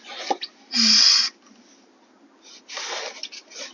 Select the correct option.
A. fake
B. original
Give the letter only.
B